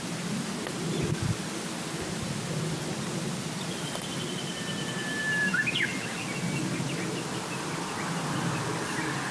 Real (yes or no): yes